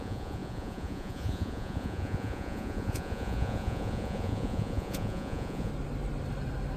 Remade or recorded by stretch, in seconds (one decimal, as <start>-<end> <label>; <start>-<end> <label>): 0.0-5.7 remade; 5.7-6.8 recorded